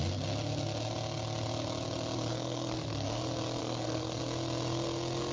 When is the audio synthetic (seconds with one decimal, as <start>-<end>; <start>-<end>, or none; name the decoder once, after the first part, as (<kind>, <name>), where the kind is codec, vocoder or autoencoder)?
2.3-3.2 (codec, SNAC); 3.6-4.2